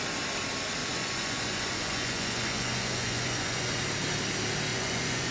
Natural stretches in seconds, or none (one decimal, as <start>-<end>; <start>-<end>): 0.0-0.8; 3.8-4.7